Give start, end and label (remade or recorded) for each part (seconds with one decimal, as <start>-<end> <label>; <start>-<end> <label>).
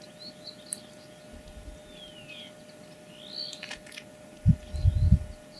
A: 0.0-5.6 recorded